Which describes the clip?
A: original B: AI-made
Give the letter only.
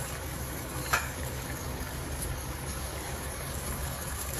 B